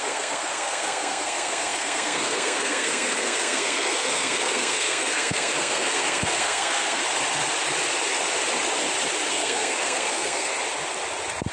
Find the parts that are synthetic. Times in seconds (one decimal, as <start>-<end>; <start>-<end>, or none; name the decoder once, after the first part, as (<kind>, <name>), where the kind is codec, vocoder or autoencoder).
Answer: 0.0-7.0 (codec, SNAC); 9.3-10.5